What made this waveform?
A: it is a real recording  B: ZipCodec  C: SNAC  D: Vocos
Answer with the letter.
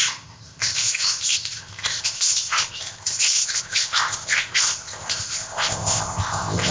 B